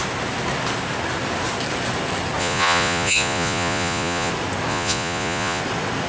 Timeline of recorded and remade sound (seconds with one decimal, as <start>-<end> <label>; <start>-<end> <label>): 0.0-2.4 recorded; 2.4-4.3 remade; 4.3-4.7 recorded; 4.7-5.6 remade; 5.6-6.1 recorded